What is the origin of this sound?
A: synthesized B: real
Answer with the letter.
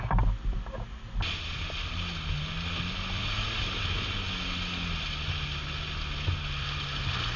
B